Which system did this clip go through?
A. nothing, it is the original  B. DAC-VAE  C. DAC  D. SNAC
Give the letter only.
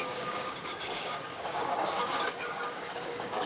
C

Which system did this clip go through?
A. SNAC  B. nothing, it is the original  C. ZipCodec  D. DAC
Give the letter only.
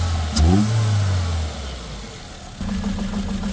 B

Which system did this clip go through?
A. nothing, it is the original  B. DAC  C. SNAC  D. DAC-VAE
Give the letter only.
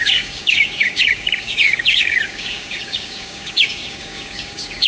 B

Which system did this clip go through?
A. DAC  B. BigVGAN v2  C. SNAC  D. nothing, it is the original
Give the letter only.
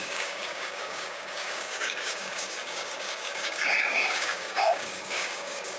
A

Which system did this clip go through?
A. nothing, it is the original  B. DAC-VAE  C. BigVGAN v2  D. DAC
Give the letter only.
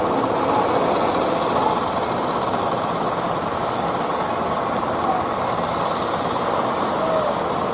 A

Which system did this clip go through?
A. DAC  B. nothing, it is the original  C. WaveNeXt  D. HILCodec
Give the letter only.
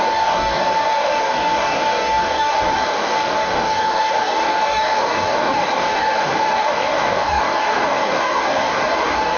A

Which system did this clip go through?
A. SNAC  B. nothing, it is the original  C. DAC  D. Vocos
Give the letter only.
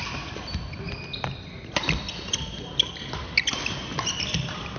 B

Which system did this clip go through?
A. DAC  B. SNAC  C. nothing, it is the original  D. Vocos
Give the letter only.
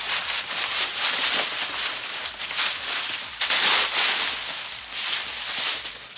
C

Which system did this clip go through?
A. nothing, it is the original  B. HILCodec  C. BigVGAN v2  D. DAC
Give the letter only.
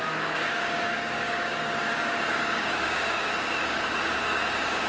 D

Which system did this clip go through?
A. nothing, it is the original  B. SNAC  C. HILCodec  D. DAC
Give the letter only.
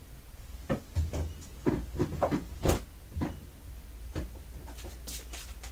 A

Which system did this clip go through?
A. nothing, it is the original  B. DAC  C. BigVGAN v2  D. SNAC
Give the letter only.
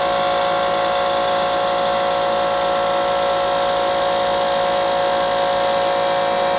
A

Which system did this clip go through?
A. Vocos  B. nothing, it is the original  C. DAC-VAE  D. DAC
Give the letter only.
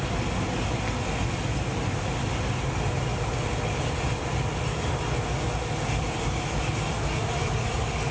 B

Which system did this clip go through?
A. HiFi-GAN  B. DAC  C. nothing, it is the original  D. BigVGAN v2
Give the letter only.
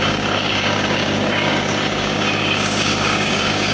B